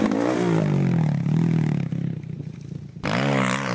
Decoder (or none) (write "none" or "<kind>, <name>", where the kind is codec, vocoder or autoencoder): none